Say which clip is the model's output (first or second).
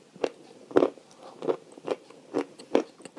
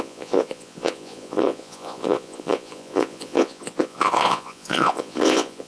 second